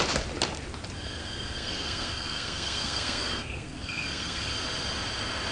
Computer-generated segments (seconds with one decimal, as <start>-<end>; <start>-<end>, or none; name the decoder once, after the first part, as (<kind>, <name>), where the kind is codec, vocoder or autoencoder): 1.2-4.5 (codec, SNAC)